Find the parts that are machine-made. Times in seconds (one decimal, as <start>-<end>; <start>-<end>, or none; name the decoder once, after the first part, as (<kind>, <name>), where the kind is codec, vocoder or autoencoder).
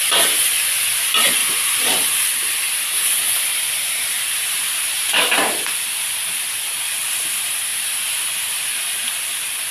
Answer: 1.4-6.4 (vocoder, BigVGAN v2); 7.7-9.2